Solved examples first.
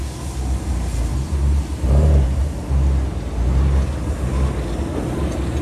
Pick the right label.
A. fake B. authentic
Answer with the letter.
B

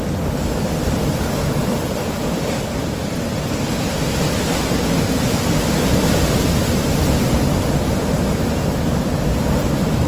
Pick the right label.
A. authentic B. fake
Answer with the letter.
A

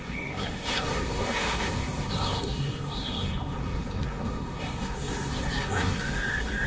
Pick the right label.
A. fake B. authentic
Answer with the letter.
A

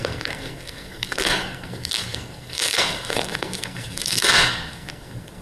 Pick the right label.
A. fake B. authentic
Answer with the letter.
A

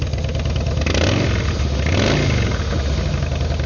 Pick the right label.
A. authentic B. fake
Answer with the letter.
A